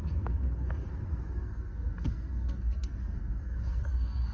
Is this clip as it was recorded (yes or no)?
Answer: no